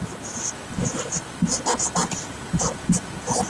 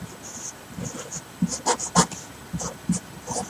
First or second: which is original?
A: first